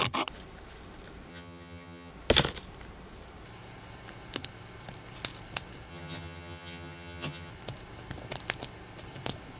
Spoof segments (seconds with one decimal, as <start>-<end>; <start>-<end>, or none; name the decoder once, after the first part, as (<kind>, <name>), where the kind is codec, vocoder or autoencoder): 1.3-2.1 (vocoder, HiFi-GAN); 5.9-7.5